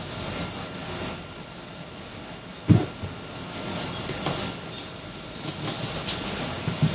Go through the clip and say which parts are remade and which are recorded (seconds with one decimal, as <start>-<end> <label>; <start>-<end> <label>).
0.0-6.9 recorded